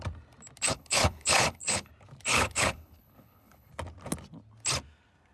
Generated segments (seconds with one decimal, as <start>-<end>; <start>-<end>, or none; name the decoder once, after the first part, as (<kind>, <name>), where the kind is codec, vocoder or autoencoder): 0.7-1.9 (codec, HILCodec); 2.3-3.7

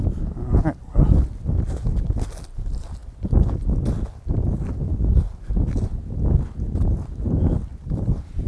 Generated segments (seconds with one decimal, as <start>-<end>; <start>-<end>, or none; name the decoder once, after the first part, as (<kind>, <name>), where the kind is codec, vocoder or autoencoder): none

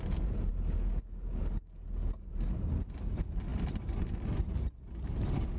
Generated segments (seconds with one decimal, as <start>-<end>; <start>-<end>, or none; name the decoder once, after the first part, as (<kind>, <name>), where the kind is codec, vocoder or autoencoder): none

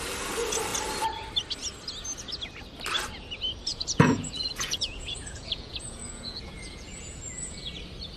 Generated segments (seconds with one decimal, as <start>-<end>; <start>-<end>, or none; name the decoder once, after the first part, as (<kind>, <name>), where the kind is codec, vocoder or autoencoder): 3.7-7.7 (vocoder, Vocos)

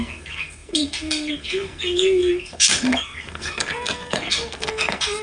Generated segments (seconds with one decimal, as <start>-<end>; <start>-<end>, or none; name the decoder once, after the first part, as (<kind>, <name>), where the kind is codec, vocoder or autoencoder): 0.0-5.2 (codec, SNAC)